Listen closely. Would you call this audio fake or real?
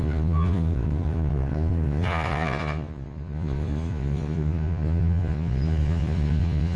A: fake